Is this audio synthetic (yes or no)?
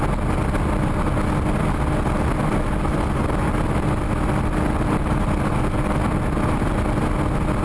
no